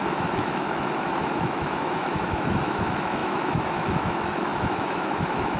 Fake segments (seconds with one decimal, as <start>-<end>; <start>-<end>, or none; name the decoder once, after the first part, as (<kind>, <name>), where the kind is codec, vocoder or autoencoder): 0.0-5.6 (autoencoder, DAC-VAE)